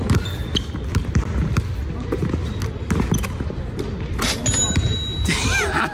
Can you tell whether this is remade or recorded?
recorded